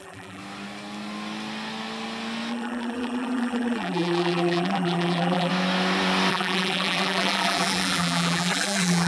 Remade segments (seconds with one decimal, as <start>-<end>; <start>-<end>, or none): 0.0-0.4; 2.5-5.5; 6.3-9.1